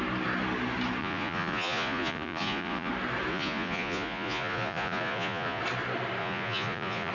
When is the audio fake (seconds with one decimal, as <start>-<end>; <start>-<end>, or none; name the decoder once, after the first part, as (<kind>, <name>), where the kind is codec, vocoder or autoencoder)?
1.0-2.9 (vocoder, Vocos); 3.3-5.6; 6.2-7.1